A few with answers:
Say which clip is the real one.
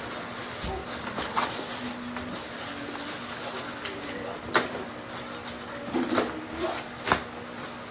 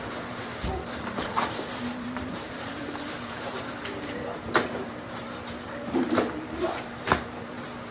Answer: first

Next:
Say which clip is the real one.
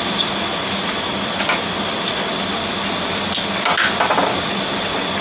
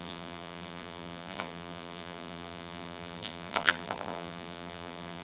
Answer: first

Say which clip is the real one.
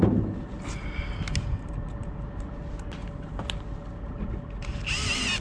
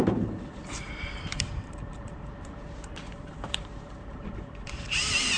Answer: first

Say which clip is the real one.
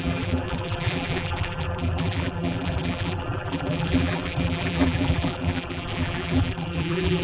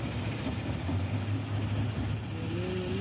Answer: second